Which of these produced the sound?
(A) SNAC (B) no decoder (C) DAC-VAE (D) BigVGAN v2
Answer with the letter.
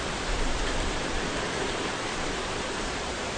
D